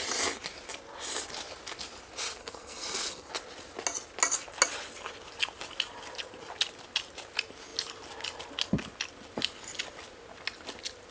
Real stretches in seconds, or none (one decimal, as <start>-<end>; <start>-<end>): 0.0-2.4; 3.3-11.1